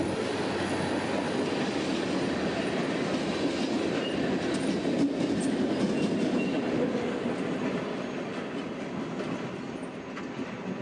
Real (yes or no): yes